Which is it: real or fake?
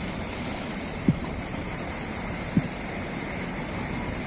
fake